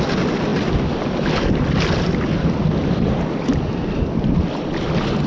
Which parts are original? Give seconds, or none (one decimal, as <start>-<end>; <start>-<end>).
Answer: 0.0-5.3